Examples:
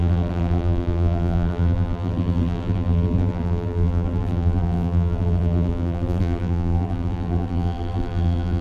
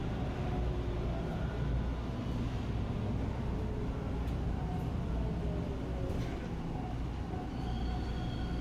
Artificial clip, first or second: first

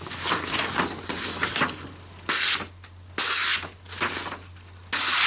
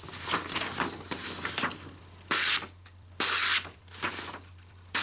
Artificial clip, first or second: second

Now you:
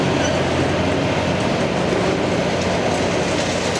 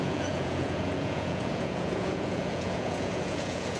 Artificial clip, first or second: second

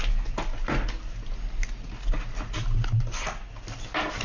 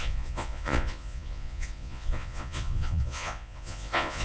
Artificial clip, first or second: second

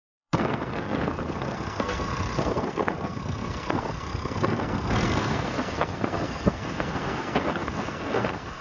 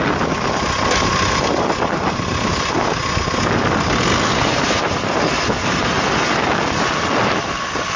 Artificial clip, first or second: first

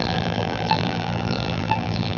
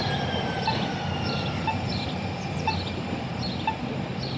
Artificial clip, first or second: first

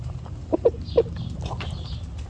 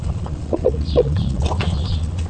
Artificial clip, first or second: second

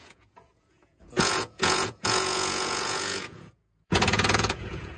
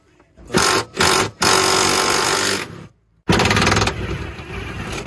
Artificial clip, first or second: first